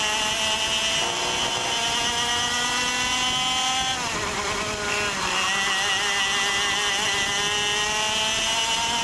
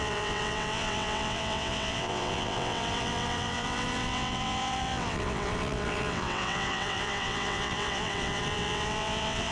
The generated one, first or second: second